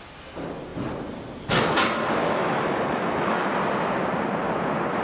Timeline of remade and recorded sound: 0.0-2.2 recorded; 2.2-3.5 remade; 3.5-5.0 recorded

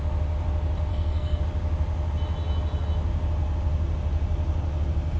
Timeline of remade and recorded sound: 0.0-0.9 recorded; 0.9-1.4 remade; 1.4-5.2 recorded

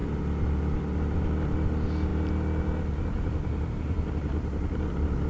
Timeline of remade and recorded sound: 0.0-2.1 remade; 2.1-5.3 recorded

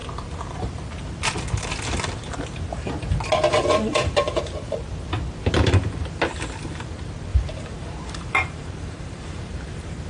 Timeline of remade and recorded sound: 0.0-3.9 recorded; 3.9-4.4 remade; 4.4-7.3 recorded; 7.3-10.1 remade

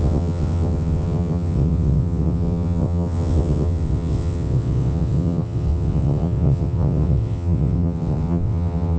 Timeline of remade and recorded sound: 0.0-9.0 remade

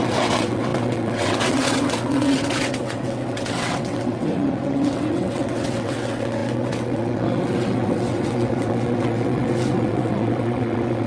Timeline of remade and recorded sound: 0.0-11.1 remade

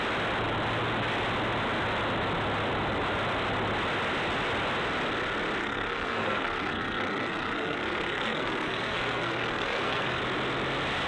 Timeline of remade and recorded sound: 0.0-5.6 recorded; 5.6-10.2 remade; 10.2-11.1 recorded

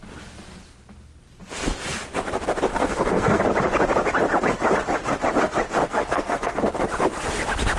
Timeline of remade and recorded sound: 0.0-2.7 recorded; 2.7-3.4 remade; 3.4-5.8 recorded; 5.8-6.8 remade; 6.8-7.8 recorded